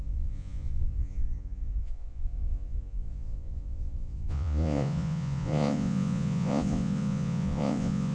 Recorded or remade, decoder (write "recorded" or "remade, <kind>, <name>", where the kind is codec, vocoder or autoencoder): remade, vocoder, Vocos